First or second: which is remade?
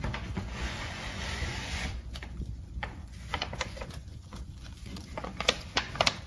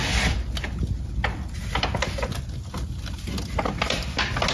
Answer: first